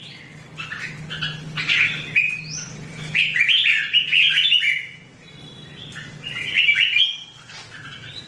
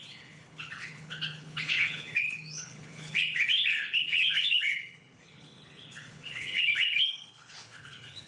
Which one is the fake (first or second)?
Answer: second